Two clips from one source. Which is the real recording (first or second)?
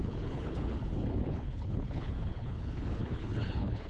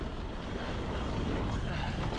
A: second